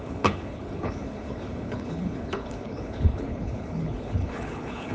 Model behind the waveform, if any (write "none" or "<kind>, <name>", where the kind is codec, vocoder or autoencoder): codec, HILCodec